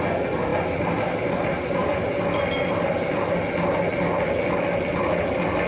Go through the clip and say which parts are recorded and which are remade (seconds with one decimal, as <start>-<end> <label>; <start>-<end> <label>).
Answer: 0.0-5.7 recorded